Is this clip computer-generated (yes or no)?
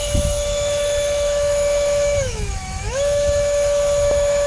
yes